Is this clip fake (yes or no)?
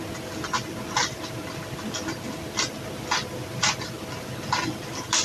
no